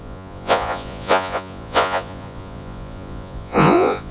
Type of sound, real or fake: fake